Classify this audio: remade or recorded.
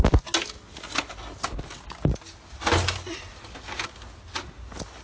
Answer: recorded